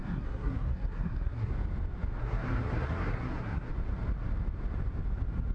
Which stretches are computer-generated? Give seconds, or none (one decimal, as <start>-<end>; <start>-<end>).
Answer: 0.0-1.5; 2.2-3.7